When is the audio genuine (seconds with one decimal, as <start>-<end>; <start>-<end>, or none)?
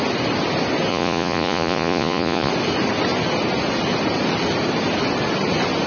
0.0-0.9; 2.5-5.9